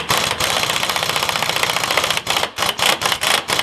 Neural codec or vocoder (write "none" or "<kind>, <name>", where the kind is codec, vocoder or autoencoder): none